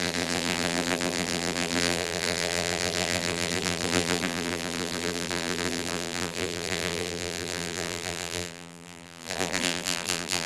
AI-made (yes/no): yes